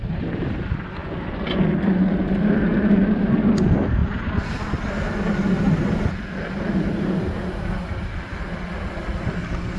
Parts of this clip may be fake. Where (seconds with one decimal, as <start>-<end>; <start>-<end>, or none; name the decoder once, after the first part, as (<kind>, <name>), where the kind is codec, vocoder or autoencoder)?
none